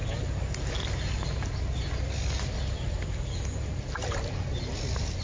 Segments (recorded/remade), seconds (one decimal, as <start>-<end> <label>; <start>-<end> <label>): 0.0-5.2 recorded